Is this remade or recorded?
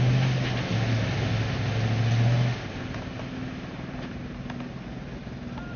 recorded